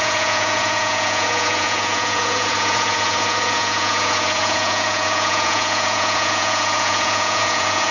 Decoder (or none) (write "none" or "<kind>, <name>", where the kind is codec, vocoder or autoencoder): vocoder, Vocos